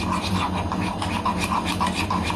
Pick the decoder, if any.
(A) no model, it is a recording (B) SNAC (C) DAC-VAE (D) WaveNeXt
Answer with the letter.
A